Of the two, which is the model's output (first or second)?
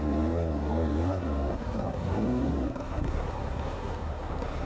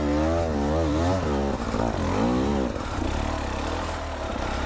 first